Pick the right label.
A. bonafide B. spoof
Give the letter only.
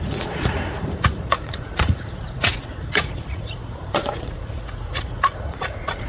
B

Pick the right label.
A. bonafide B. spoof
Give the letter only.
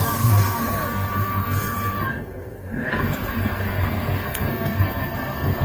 B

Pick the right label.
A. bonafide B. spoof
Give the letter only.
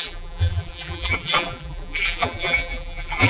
B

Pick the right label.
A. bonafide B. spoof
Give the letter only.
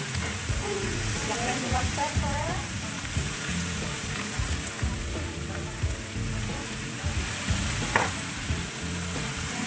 B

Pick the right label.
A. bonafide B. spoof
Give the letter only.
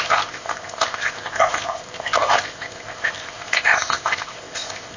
B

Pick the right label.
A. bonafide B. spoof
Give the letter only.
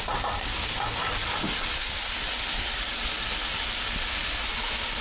A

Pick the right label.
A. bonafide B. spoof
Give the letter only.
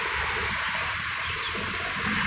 A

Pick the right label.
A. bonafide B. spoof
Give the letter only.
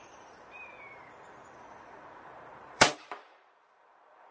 B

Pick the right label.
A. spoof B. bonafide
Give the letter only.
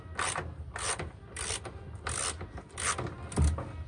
B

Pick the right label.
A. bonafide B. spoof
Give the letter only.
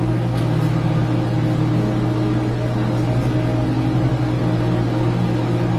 A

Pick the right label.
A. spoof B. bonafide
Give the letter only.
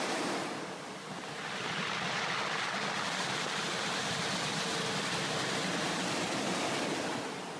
B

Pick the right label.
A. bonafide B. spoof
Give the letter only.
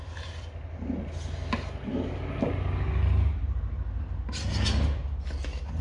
A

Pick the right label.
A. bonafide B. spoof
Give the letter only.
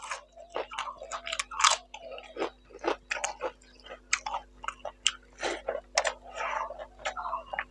A